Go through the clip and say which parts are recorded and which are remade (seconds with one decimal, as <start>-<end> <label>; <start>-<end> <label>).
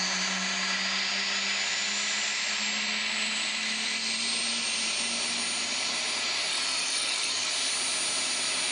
0.0-6.5 recorded; 6.5-7.5 remade; 7.5-8.7 recorded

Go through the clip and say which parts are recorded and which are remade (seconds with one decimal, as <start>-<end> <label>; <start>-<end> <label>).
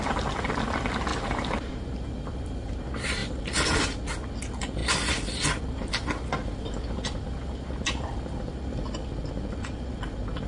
0.0-1.1 recorded; 1.1-2.8 remade; 2.8-10.5 recorded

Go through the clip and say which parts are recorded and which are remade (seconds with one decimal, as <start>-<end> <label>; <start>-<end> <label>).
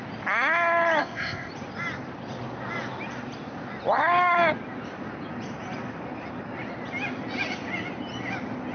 0.0-1.0 recorded; 1.0-1.5 remade; 1.5-8.7 recorded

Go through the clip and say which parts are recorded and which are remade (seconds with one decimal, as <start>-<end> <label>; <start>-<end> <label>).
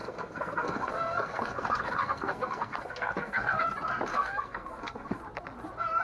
0.0-3.6 remade; 3.6-4.1 recorded; 4.1-5.2 remade; 5.2-6.0 recorded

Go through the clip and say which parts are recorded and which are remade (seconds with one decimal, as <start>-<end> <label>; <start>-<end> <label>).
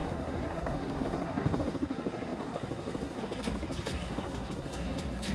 0.0-5.3 remade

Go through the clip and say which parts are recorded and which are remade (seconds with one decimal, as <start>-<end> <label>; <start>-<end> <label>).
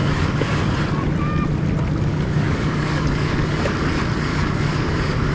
0.0-0.7 remade; 0.7-2.1 recorded; 2.1-3.7 remade; 3.7-4.3 recorded; 4.3-5.3 remade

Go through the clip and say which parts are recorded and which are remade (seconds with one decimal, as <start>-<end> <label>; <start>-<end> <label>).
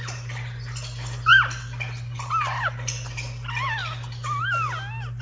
0.0-5.2 recorded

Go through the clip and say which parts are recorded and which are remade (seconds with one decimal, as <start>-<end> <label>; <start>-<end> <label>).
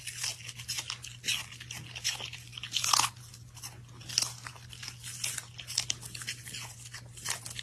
0.0-7.6 recorded